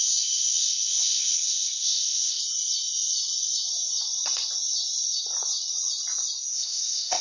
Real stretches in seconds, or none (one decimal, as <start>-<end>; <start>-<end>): 2.4-6.5